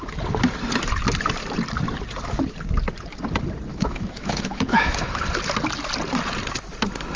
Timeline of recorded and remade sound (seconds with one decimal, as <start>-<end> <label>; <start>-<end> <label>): 0.0-3.7 recorded; 3.7-5.2 remade; 5.2-7.2 recorded